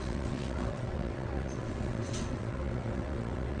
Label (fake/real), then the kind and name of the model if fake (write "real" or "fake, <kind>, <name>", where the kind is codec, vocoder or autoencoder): fake, vocoder, WaveNeXt